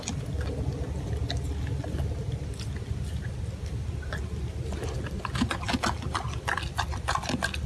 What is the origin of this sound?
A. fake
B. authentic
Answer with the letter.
B